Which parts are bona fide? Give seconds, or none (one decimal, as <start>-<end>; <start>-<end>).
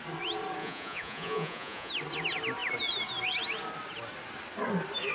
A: 0.0-0.6; 1.9-5.1